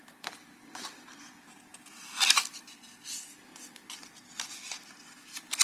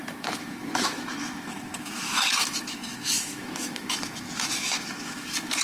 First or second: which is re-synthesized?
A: second